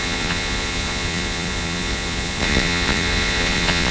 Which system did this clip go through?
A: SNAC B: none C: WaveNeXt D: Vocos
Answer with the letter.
D